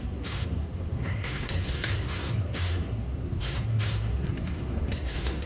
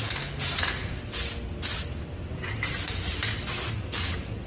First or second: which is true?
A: second